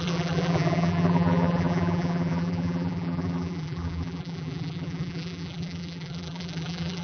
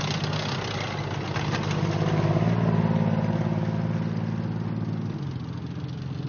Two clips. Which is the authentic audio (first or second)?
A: second